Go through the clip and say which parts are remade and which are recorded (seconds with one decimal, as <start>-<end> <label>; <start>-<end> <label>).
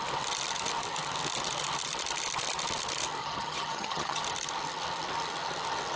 0.0-3.2 recorded; 3.2-4.2 remade; 4.2-6.0 recorded